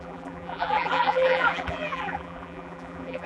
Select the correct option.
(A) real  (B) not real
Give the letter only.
B